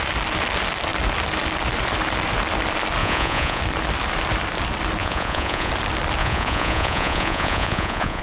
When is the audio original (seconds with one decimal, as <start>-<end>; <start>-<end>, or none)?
0.0-3.0; 3.6-5.0; 5.7-6.2